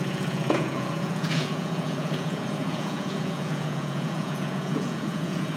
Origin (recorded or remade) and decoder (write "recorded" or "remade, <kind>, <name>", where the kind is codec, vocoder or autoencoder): remade, vocoder, Vocos